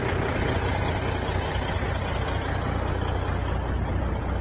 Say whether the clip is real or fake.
real